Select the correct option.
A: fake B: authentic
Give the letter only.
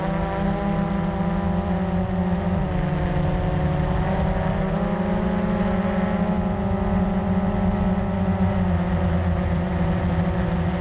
B